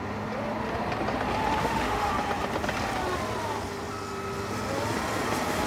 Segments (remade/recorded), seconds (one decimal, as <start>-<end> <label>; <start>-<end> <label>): 0.0-1.6 recorded; 1.6-2.1 remade; 2.1-5.7 recorded